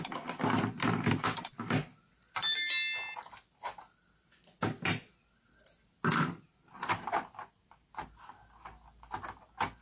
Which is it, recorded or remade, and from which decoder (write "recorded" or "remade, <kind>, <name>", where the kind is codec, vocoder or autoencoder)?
recorded